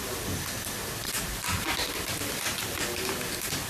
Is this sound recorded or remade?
recorded